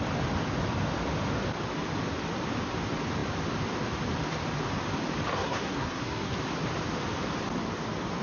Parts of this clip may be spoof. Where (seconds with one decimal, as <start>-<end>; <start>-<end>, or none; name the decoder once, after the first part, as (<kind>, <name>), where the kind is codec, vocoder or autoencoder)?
5.3-6.3 (codec, SNAC)